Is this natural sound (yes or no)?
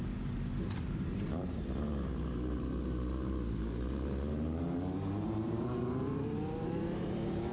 no